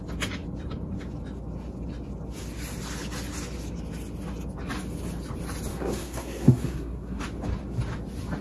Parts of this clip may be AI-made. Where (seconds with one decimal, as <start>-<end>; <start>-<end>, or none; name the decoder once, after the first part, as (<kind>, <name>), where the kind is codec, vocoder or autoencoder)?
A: 5.7-7.2 (codec, SNAC)